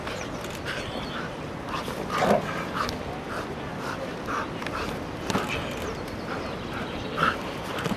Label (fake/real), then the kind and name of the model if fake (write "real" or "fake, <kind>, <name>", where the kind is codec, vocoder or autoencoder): real